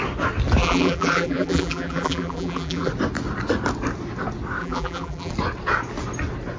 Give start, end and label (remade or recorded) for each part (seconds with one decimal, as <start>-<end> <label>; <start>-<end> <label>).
0.0-0.6 recorded; 0.6-2.9 remade; 2.9-4.6 recorded; 4.6-5.3 remade; 5.3-6.6 recorded